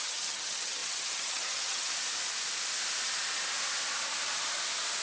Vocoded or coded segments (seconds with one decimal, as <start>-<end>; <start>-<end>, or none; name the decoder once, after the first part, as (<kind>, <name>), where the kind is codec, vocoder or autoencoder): 0.0-1.9 (vocoder, HiFi-GAN)